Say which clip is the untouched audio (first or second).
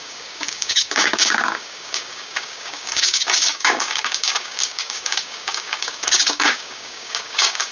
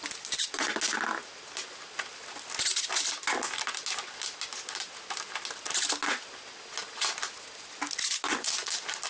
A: second